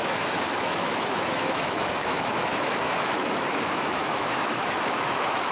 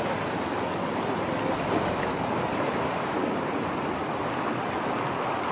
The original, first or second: second